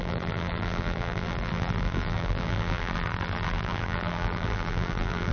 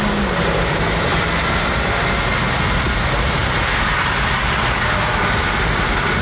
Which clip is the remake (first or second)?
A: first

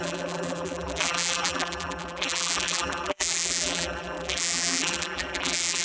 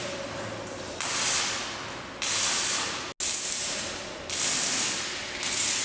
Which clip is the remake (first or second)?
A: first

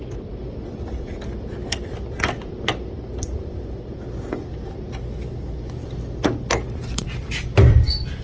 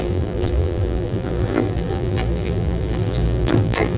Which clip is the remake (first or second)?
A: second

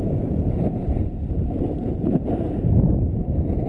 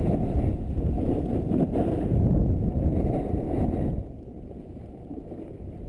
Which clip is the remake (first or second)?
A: first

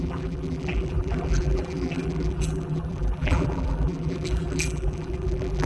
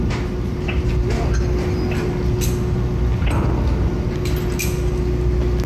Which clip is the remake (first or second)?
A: first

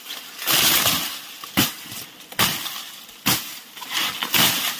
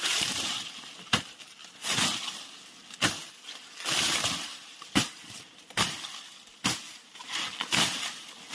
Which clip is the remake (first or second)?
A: second